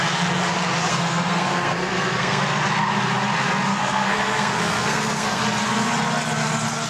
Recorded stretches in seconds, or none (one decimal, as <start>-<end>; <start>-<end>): 0.0-0.9; 2.4-3.7; 5.4-6.9